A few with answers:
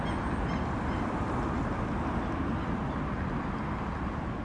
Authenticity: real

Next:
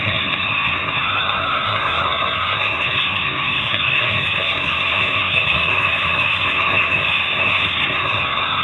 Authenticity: fake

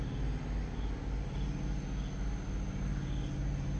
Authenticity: real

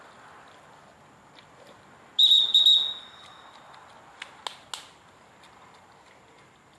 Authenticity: real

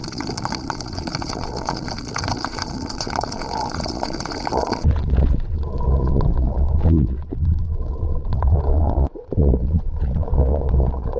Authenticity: fake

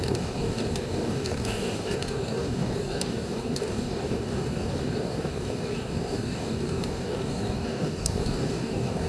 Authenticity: fake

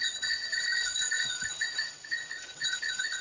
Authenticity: fake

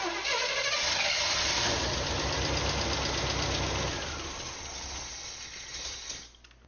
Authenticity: real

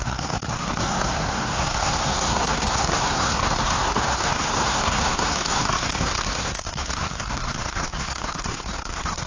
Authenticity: fake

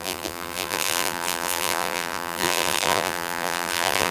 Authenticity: fake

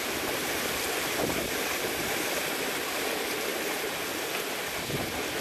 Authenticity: real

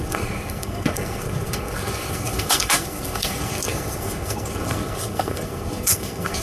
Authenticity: fake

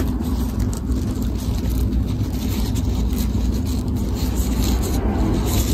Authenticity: real